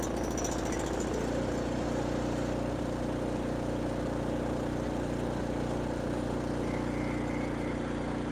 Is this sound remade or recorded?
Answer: recorded